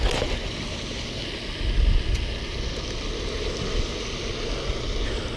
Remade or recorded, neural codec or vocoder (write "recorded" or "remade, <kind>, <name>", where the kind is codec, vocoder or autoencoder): recorded